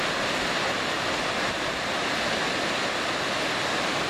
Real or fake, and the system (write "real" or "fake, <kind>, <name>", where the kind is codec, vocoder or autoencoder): real